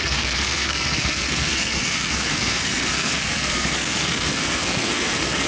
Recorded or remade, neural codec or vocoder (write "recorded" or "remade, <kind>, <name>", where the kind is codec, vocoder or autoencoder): remade, codec, SNAC